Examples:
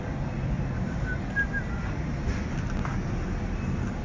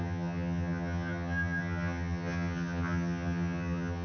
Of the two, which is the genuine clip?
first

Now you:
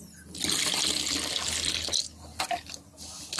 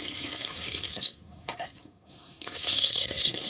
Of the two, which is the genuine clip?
first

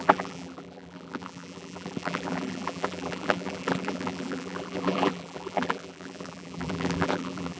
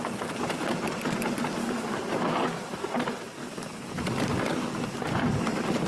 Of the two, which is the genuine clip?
second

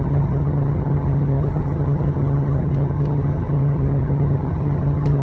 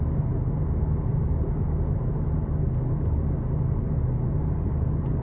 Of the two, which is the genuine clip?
second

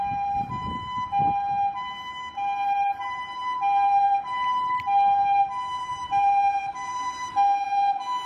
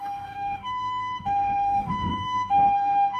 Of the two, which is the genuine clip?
first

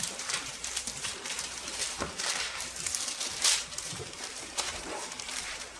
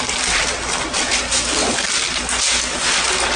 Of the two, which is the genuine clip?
second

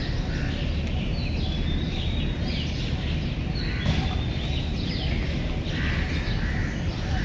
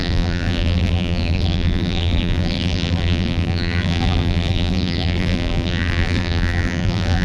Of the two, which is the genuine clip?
first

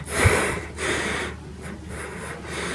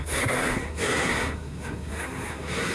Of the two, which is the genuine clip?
first